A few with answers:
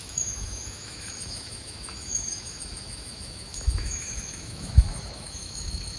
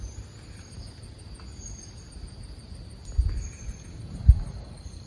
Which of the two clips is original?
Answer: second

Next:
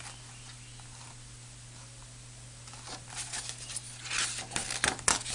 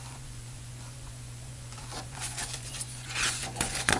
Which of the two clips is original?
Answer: first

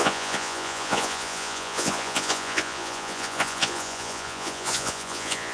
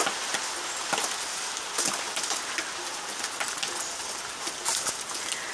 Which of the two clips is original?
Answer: second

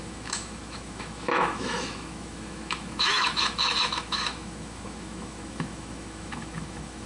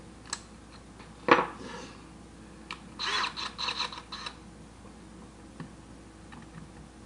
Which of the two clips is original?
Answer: second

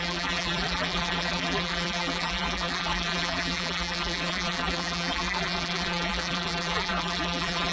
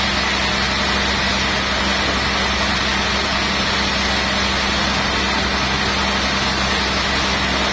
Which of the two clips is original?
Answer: second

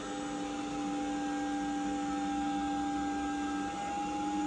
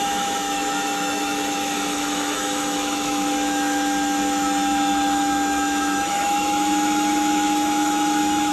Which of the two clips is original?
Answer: first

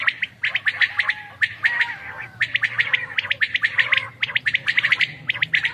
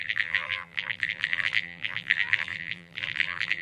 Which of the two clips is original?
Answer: first